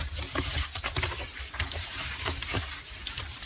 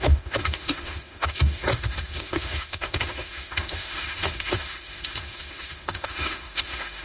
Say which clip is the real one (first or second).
first